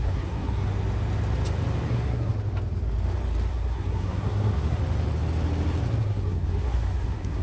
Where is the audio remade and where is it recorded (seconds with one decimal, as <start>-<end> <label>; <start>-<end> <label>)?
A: 0.0-0.7 remade; 0.7-1.9 recorded; 1.9-2.3 remade; 2.3-3.5 recorded; 3.5-4.8 remade; 4.8-6.0 recorded; 6.0-7.4 remade